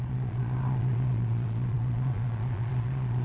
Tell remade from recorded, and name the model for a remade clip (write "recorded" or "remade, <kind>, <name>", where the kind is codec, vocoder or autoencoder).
remade, vocoder, Vocos